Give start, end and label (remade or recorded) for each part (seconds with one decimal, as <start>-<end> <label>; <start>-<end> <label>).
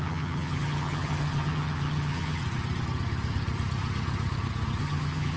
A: 0.0-2.4 remade; 2.4-4.8 recorded; 4.8-5.4 remade